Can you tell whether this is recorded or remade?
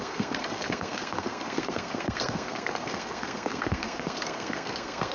remade